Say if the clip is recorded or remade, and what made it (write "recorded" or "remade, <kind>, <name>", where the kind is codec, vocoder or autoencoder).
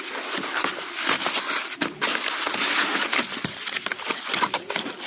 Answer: recorded